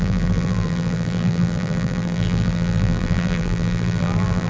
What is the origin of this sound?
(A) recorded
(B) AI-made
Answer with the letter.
B